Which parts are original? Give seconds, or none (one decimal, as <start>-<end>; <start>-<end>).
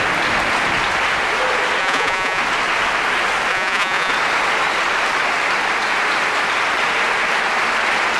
0.0-1.8; 2.4-3.5; 4.1-8.2